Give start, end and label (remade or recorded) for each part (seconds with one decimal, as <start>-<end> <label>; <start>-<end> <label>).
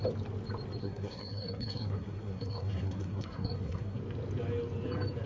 0.0-0.8 recorded; 0.8-4.0 remade; 4.0-5.3 recorded